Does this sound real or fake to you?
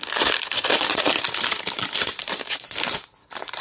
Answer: fake